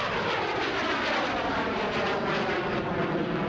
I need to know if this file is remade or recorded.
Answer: recorded